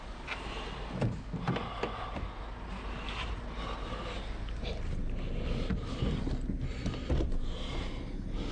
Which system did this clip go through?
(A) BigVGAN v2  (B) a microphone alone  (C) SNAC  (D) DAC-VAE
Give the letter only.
B